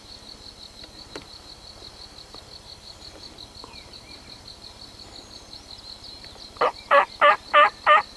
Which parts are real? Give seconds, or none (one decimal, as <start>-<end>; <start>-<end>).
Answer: 0.0-8.2